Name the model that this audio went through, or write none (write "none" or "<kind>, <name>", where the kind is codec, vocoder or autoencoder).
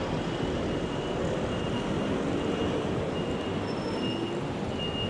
none